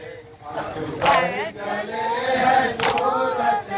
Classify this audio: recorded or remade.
recorded